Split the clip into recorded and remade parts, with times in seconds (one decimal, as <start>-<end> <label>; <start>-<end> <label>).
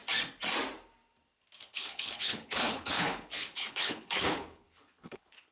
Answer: 0.0-1.6 recorded; 1.6-5.5 remade